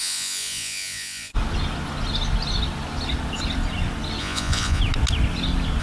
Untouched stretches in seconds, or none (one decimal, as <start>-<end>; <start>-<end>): 1.3-4.2; 4.8-5.8